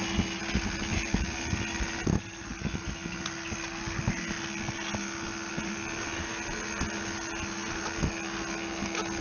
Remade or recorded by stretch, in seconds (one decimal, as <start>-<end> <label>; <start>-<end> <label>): 0.0-9.2 recorded